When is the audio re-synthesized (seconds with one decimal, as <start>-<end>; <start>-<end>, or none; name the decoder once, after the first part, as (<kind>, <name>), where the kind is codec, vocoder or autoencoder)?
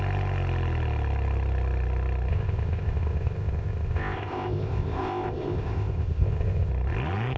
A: 2.3-6.7 (codec, ZipCodec)